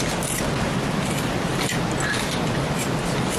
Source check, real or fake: real